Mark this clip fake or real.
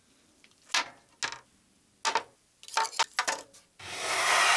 real